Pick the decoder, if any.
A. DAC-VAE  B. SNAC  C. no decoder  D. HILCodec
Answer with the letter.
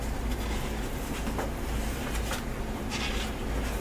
C